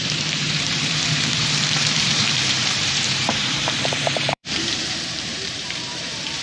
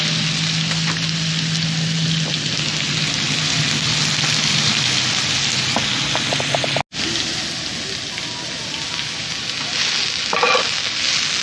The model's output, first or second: first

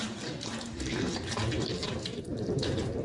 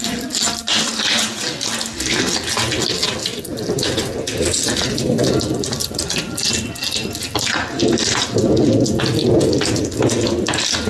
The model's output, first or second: first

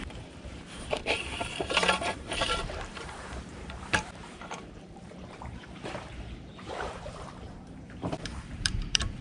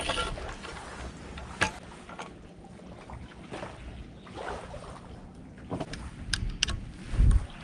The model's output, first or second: first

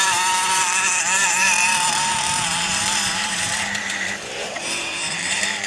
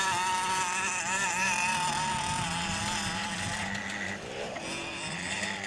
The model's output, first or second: first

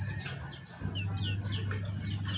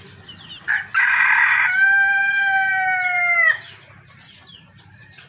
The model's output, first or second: second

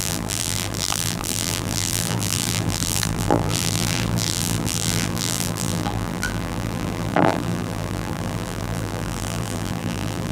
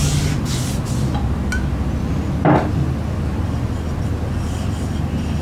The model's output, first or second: first